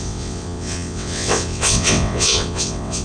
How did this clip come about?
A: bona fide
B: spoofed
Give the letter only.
B